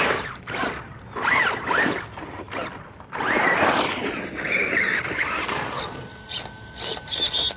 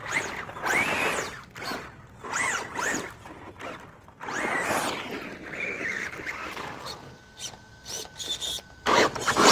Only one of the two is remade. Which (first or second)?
first